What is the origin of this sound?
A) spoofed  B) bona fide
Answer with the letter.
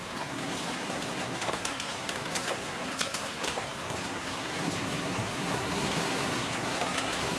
A